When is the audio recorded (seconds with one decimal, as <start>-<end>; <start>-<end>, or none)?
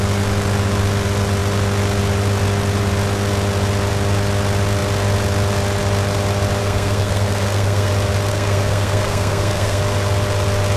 0.0-6.6; 7.9-8.3; 9.8-10.8